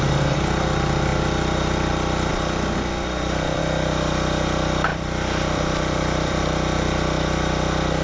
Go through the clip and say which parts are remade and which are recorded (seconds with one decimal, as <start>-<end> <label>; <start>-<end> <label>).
0.0-2.3 recorded; 2.3-3.6 remade; 3.6-4.9 recorded; 4.9-6.4 remade; 6.4-8.0 recorded